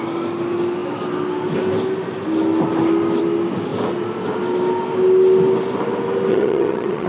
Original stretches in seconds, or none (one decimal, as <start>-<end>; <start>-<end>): 0.0-6.3